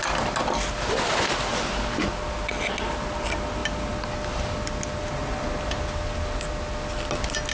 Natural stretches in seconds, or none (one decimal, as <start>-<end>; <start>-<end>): 0.0-7.5